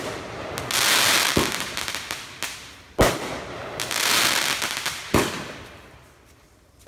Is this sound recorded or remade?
recorded